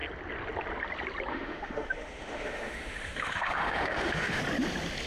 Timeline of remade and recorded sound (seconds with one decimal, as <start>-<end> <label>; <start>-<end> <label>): 0.0-1.3 recorded; 1.3-4.4 remade; 4.4-5.1 recorded